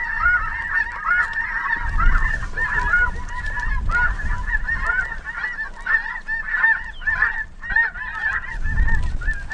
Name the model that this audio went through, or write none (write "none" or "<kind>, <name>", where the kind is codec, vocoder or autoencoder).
none